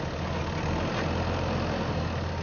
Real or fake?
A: real